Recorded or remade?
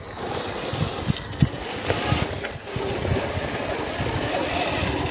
recorded